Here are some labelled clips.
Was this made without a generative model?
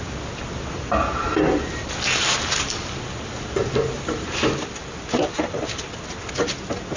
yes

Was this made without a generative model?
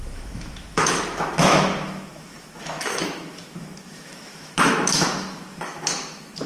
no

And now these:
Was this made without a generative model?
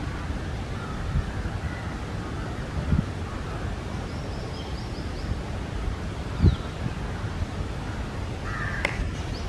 yes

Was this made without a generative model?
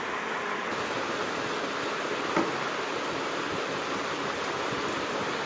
yes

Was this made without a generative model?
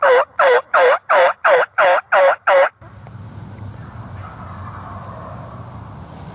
yes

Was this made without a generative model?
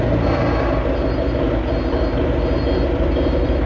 yes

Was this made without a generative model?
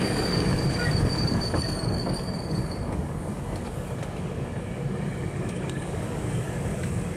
no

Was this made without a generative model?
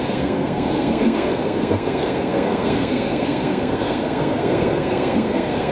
no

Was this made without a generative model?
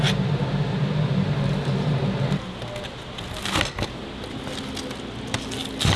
yes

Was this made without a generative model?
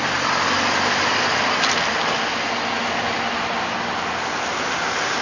yes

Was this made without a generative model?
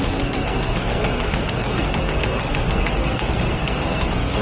no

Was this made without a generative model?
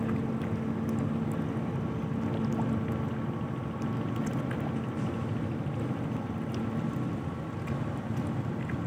yes